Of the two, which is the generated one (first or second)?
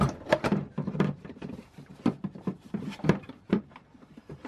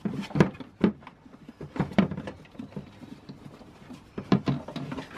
first